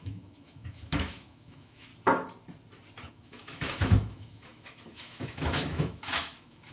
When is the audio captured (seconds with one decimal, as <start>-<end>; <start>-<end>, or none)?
1.9-3.1